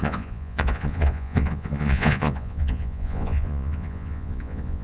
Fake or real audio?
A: fake